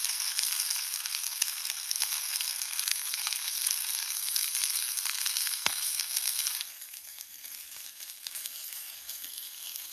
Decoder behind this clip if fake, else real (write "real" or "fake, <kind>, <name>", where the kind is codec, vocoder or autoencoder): fake, codec, SNAC